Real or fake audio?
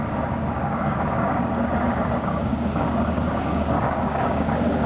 fake